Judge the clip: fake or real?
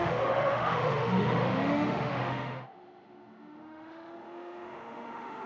fake